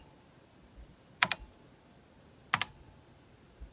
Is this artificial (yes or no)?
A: no